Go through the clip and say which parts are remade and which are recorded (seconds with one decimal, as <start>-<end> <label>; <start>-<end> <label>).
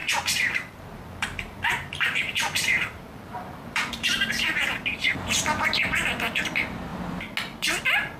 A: 0.0-4.3 remade; 4.3-8.2 recorded